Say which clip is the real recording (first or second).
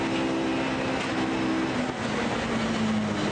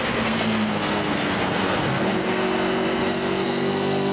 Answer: first